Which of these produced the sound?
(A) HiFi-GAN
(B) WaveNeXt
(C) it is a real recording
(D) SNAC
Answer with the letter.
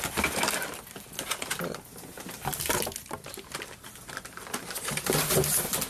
C